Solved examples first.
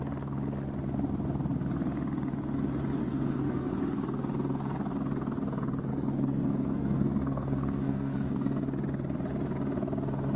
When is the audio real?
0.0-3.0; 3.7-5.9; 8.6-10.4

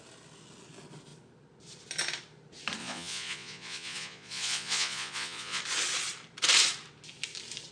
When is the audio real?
0.0-2.8; 5.6-7.7

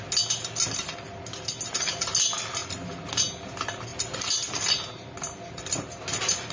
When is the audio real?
0.0-6.5

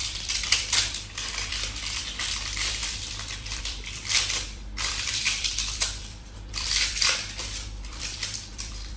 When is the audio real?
none

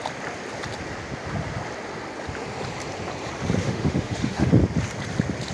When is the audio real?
0.0-3.6; 4.5-5.5

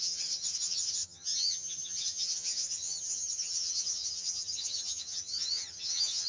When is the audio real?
none

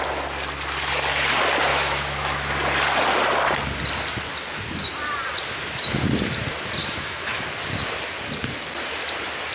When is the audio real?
0.0-1.7; 2.5-6.8; 7.4-9.5